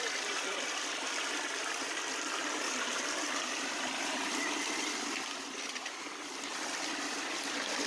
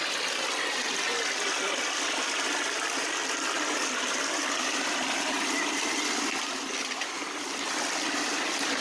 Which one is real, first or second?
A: second